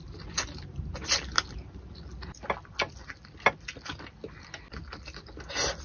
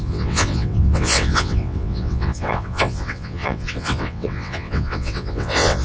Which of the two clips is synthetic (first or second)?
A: second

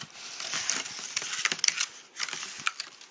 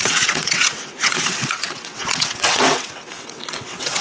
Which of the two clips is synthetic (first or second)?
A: second